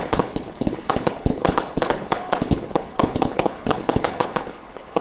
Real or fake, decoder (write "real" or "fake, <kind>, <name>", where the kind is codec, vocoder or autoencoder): fake, codec, HILCodec